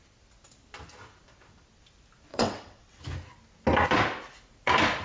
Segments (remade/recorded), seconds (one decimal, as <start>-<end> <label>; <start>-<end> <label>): 0.0-2.3 recorded; 2.3-3.0 remade; 3.0-5.0 recorded